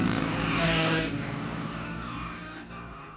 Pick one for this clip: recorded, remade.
remade